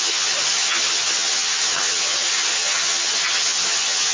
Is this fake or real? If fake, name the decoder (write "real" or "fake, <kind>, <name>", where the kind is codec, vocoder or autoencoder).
fake, vocoder, HiFi-GAN